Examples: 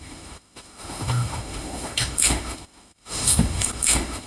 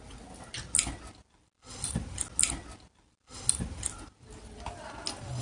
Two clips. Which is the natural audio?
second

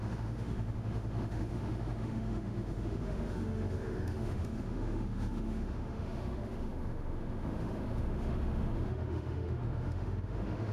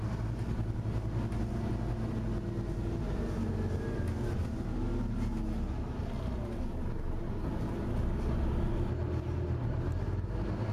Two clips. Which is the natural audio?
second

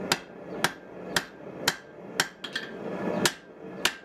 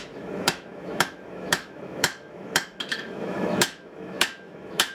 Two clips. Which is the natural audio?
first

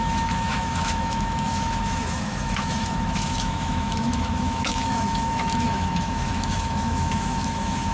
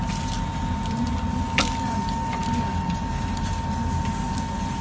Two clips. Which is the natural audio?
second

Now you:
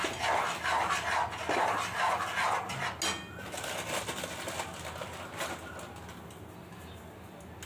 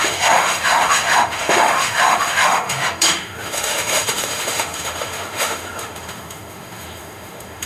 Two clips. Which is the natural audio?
first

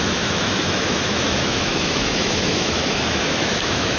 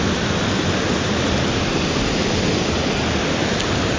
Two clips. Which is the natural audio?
second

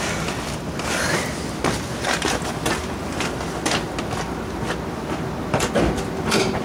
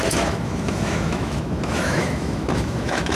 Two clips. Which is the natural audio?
first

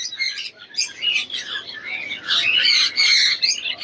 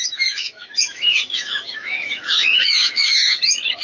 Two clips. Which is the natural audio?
first